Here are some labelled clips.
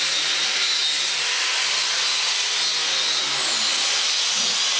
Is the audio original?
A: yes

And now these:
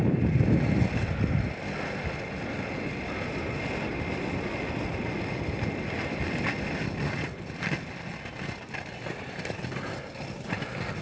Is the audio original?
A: yes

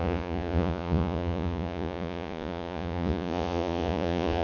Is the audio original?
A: no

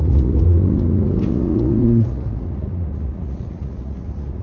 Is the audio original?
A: no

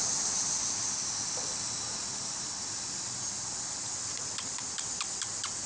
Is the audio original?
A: yes